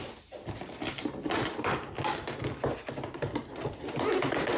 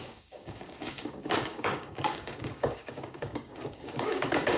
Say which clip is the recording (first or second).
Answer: first